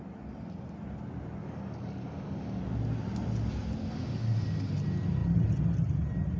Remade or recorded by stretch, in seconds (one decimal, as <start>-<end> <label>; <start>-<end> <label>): 0.0-1.4 recorded; 1.4-2.6 remade; 2.6-6.4 recorded